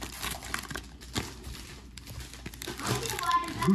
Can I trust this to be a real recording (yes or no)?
yes